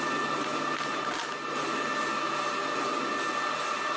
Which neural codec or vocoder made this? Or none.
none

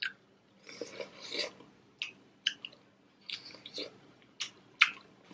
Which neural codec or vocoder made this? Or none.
none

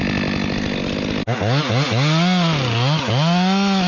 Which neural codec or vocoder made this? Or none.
none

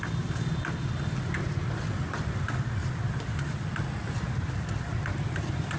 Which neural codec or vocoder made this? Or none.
none